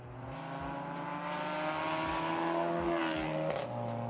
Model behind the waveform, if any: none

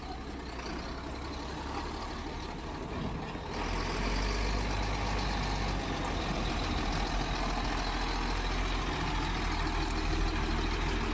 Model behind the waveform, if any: none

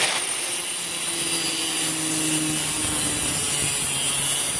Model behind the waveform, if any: none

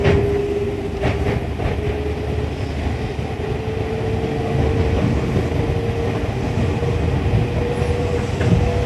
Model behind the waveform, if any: none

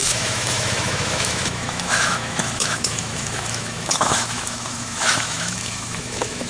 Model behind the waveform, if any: autoencoder, DAC-VAE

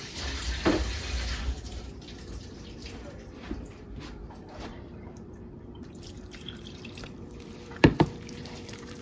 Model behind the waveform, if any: vocoder, BigVGAN v2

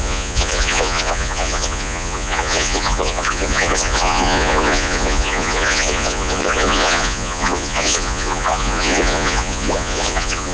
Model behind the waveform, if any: vocoder, Vocos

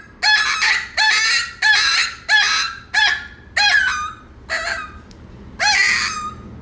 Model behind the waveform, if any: none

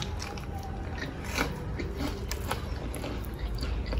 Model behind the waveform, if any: none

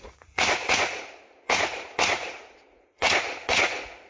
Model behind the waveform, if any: vocoder, Vocos